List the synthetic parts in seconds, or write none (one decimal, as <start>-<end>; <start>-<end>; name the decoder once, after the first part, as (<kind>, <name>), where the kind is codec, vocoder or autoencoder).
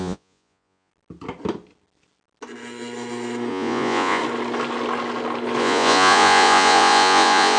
0.0-0.9 (vocoder, Vocos); 3.5-4.2; 5.6-7.6